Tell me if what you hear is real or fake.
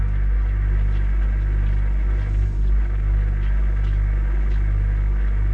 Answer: real